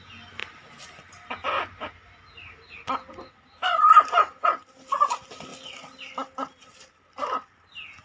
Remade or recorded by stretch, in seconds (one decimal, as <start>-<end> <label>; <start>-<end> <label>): 0.0-8.0 recorded